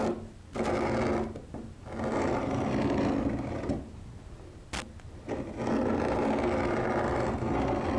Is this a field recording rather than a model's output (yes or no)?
yes